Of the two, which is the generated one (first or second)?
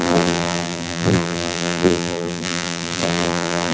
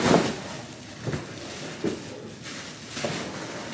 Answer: first